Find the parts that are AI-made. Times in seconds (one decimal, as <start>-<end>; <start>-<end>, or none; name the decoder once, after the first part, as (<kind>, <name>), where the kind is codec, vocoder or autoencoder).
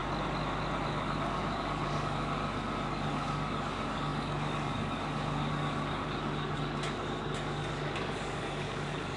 0.9-9.2 (codec, DAC)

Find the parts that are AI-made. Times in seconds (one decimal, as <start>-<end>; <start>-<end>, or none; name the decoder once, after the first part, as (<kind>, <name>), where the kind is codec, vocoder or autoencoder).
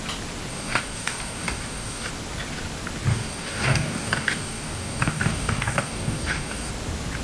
0.5-2.1 (codec, DAC); 3.1-6.7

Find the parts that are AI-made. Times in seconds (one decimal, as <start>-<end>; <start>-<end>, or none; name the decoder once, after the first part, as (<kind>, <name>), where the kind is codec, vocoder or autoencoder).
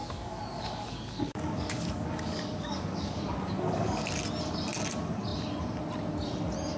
0.0-4.1 (codec, DAC)